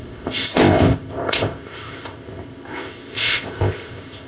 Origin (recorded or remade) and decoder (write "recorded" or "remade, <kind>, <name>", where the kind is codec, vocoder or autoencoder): remade, codec, ZipCodec